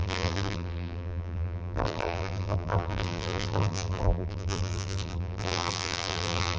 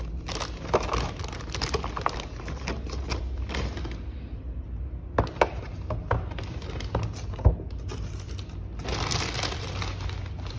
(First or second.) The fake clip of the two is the first